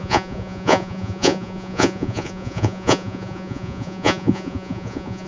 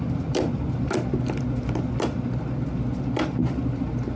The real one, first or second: second